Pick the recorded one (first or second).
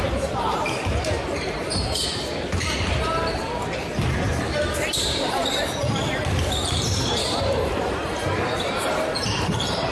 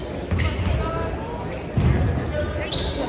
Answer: second